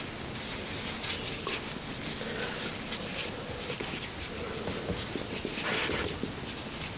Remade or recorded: recorded